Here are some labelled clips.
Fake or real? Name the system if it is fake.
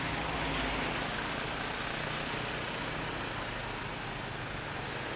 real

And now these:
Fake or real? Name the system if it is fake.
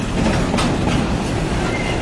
real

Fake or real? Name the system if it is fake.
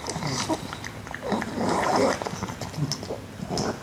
real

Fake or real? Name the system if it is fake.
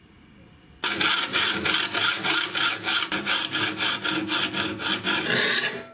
real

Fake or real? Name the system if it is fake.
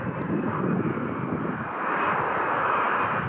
real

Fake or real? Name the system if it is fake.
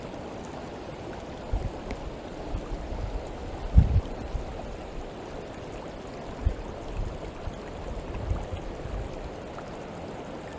real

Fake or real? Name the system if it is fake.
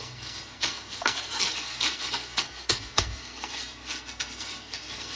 fake, codec, SNAC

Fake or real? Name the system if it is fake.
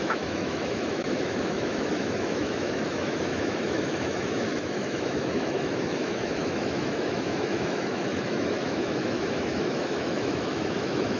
fake, autoencoder, DAC-VAE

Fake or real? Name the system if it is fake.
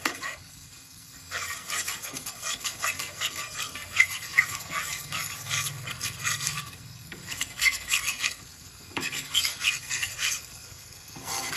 fake, codec, SNAC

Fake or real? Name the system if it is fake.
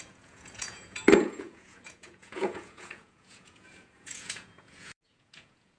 fake, vocoder, Vocos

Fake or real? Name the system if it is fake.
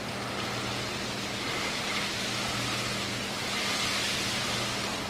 real